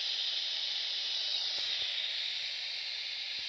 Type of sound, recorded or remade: recorded